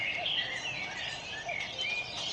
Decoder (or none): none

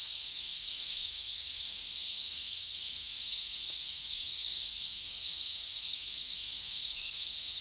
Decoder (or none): codec, SNAC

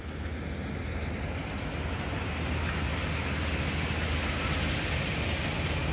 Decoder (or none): none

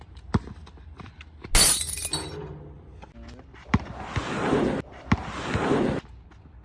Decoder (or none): none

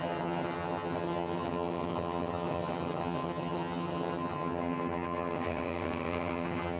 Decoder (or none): vocoder, HiFi-GAN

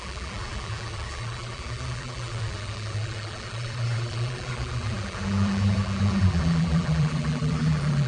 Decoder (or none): vocoder, BigVGAN v2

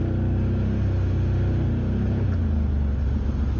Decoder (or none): none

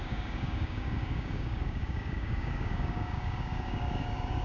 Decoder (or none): codec, DAC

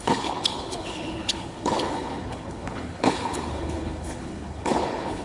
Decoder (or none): codec, HILCodec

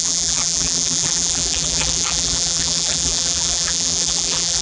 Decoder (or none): vocoder, BigVGAN v2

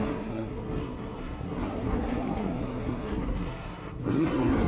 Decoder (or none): codec, SNAC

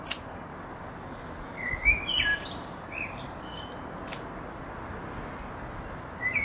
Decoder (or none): none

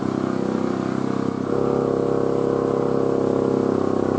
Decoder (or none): none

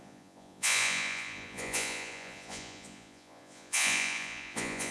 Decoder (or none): vocoder, Vocos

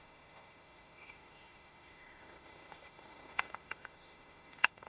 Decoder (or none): autoencoder, DAC-VAE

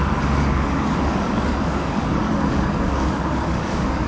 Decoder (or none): codec, DAC